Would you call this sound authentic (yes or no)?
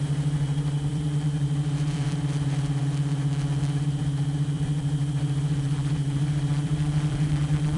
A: no